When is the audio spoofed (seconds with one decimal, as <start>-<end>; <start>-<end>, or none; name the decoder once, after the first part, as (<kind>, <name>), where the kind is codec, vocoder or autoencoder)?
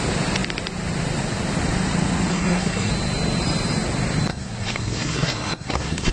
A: 2.3-2.9 (codec, SNAC); 4.3-6.1